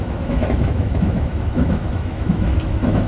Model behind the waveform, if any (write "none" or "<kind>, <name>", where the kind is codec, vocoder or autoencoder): autoencoder, DAC-VAE